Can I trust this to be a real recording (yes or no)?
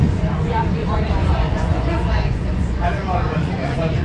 no